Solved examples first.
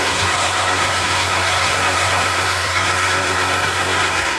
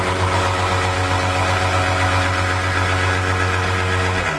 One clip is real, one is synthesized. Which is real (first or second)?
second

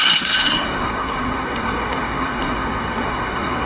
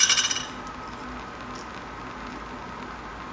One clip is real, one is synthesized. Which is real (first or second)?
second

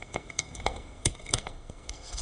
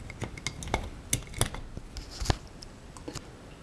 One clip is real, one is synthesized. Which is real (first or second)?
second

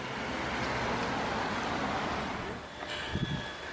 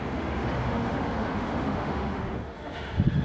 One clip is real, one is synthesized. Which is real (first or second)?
first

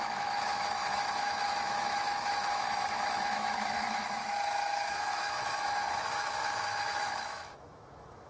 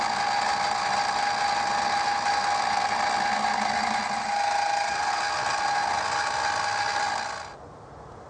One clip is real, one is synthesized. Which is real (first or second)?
second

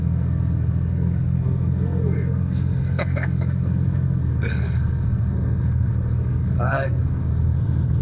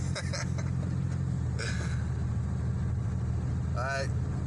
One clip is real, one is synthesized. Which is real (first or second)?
second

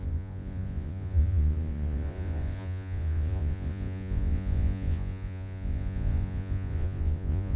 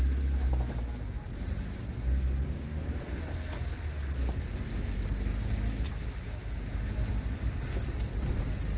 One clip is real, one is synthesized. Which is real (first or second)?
second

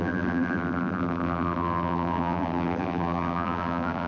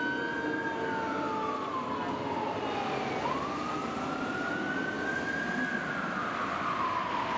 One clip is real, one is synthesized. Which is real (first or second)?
second